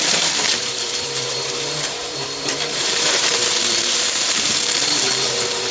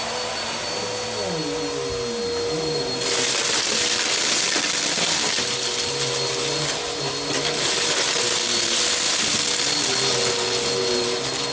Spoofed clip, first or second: first